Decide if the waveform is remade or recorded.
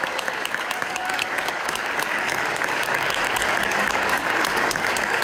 remade